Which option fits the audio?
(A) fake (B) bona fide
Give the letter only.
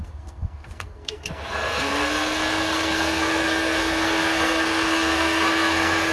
A